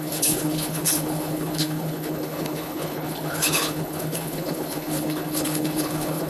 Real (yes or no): no